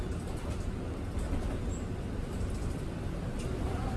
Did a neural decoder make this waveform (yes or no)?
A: no